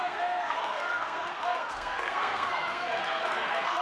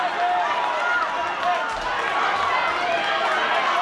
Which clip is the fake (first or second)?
first